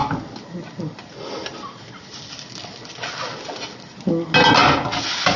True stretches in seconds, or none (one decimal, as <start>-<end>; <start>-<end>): 0.0-5.4